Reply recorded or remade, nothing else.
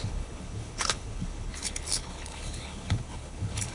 remade